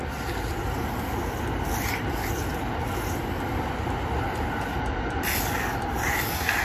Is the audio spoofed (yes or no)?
no